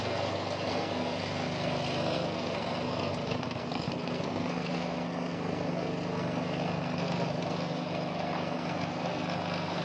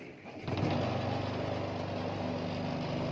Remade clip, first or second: first